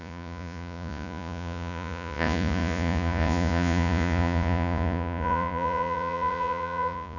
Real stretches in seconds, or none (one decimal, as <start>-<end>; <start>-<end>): none